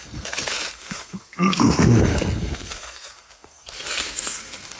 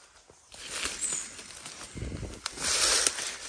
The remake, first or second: first